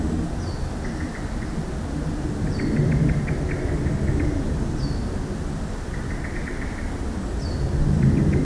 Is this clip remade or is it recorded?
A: recorded